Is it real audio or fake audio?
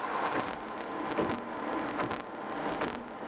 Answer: real